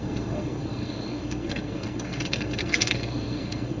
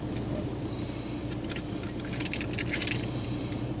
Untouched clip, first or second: second